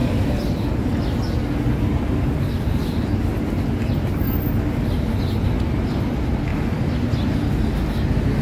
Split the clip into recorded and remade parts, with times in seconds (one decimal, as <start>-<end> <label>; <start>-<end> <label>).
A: 0.0-8.4 recorded